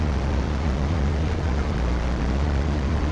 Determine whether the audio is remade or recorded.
remade